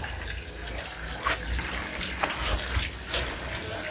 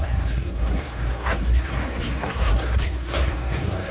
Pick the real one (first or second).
first